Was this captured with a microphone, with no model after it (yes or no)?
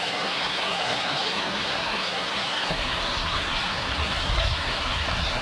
no